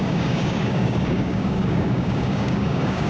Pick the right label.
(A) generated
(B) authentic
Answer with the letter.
A